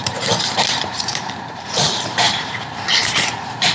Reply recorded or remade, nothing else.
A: remade